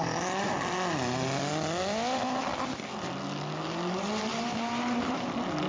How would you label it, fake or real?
real